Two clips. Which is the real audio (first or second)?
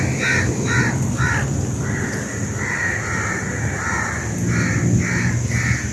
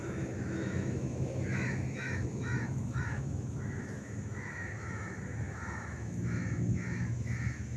first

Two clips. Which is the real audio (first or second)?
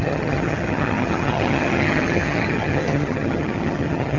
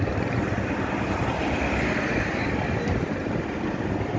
second